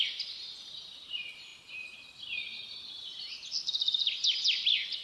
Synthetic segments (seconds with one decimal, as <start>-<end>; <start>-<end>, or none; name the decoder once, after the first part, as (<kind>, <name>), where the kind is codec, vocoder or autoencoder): none